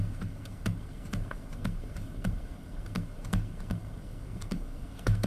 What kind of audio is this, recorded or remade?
remade